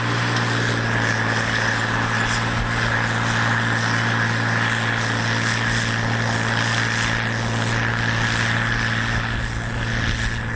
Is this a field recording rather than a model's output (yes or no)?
yes